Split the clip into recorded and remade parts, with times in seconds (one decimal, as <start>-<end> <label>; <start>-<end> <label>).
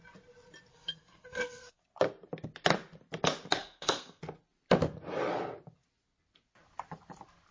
0.0-0.7 recorded; 0.7-1.8 remade; 1.8-3.6 recorded; 3.6-4.2 remade; 4.2-7.5 recorded